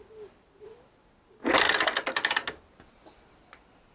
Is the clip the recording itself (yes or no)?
yes